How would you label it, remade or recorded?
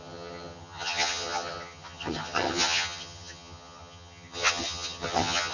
remade